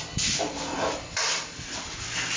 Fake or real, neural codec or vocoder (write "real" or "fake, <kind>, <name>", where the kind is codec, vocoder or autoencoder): real